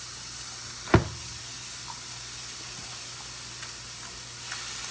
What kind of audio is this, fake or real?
real